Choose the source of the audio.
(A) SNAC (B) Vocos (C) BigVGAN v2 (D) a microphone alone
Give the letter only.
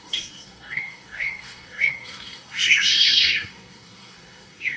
A